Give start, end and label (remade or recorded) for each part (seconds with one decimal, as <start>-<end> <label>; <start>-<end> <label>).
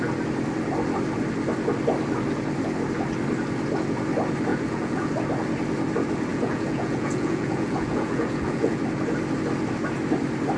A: 0.0-4.5 recorded; 4.5-5.1 remade; 5.1-6.3 recorded; 6.3-8.8 remade; 8.8-10.6 recorded